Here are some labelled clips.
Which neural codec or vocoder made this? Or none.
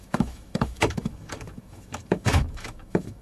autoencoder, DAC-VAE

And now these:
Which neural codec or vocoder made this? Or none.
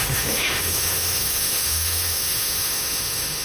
autoencoder, DAC-VAE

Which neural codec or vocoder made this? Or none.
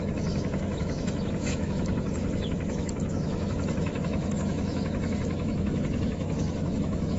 autoencoder, DAC-VAE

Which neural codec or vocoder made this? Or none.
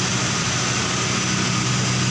none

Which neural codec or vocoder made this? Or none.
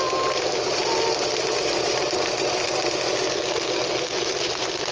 none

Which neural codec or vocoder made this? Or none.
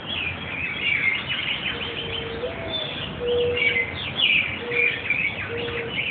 none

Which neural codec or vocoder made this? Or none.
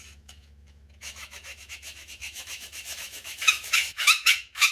autoencoder, DAC-VAE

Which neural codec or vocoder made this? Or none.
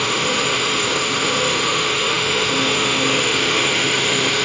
autoencoder, DAC-VAE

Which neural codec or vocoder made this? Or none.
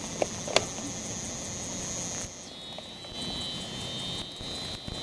none